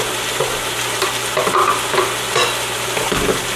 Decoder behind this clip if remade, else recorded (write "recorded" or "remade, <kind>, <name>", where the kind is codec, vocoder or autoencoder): recorded